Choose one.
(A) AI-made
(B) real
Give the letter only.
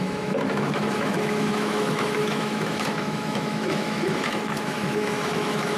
A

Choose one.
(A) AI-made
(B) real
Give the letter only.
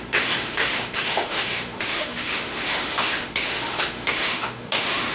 A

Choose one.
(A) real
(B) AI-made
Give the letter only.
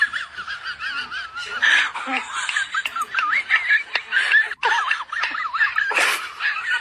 A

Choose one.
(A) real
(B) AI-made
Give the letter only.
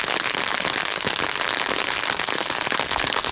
A